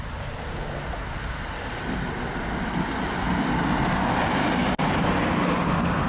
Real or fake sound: real